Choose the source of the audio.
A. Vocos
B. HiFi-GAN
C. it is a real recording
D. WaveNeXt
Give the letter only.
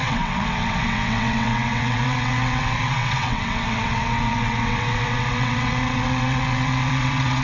D